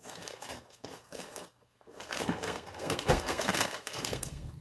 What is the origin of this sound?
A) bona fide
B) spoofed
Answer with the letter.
B